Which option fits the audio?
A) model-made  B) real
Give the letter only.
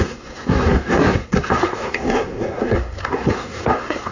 A